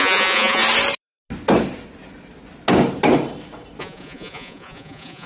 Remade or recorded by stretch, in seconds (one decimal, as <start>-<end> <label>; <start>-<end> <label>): 0.0-0.6 remade; 0.6-3.8 recorded; 3.8-5.3 remade